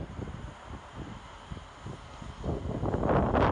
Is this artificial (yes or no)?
no